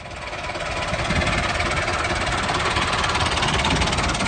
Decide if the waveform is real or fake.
real